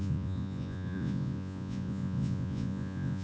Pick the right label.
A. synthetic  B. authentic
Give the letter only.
A